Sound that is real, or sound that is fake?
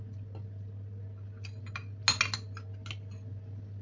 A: real